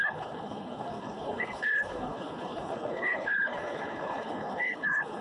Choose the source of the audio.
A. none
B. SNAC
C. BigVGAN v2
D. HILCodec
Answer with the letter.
D